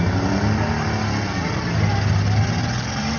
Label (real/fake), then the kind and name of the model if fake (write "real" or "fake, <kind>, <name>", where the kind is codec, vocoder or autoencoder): real